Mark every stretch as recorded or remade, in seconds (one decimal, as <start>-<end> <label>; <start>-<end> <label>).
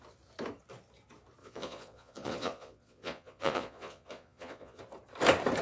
0.0-1.4 recorded; 1.4-4.8 remade; 4.8-5.6 recorded